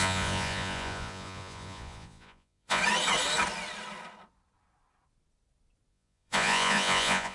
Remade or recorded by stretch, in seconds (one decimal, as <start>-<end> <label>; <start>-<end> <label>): 0.0-2.8 remade; 2.8-5.9 recorded; 5.9-7.3 remade